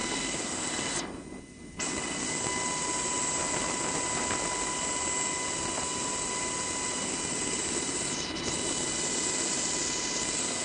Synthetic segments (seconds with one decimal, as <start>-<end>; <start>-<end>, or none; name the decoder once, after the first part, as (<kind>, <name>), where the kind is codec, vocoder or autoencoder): none